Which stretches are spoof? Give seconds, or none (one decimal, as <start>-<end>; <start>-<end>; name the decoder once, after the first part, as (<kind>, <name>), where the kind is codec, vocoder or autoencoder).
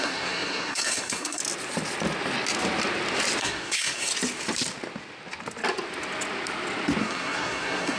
0.0-1.4 (codec, SNAC); 3.4-4.1; 7.0-8.0